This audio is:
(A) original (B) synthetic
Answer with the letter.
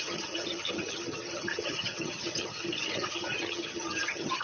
B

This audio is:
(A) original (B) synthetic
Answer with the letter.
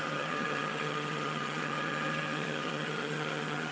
B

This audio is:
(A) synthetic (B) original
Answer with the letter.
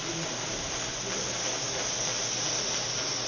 B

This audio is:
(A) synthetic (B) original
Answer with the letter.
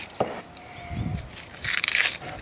B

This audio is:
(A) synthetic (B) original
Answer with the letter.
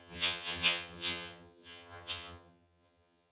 A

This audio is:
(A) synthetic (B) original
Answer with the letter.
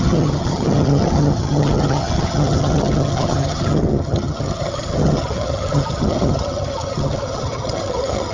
A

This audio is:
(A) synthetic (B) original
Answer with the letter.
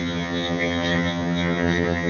A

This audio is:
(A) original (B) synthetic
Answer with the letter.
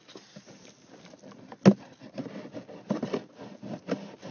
A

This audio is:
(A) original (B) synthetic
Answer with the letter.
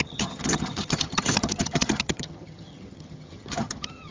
B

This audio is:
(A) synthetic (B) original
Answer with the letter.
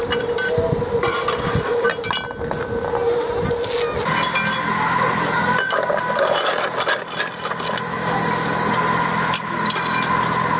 B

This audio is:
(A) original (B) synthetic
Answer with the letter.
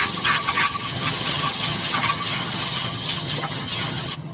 B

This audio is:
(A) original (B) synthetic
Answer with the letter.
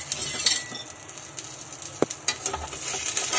A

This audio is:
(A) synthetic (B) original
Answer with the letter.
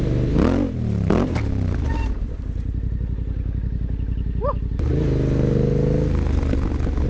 B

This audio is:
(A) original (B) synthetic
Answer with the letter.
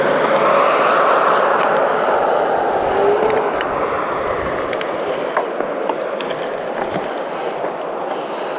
A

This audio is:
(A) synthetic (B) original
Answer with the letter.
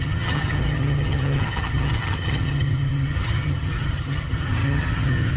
A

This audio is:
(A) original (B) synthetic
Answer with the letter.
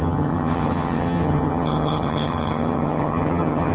B